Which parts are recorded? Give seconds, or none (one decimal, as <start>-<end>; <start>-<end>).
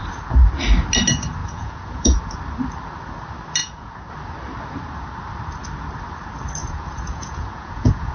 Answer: 0.0-1.4; 2.2-3.6; 4.1-6.6